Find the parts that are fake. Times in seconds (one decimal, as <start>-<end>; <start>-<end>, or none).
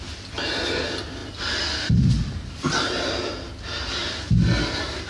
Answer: none